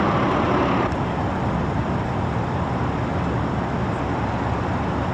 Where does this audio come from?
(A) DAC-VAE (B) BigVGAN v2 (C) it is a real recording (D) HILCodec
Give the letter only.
C